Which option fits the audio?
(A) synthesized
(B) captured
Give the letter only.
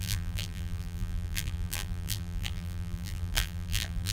A